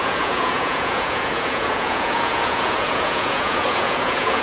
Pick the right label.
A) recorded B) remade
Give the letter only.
B